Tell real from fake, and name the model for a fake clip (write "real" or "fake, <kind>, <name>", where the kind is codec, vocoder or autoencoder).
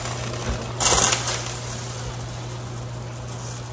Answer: real